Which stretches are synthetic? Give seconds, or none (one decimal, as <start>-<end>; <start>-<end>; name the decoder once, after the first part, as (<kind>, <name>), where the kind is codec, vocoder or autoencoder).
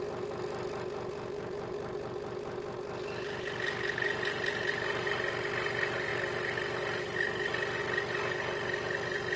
none